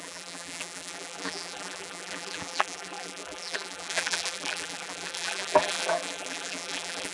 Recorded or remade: remade